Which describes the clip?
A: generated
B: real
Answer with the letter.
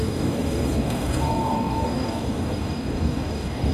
A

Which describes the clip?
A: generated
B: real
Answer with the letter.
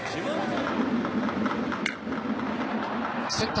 B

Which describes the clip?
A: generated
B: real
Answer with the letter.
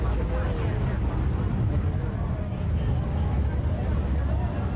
B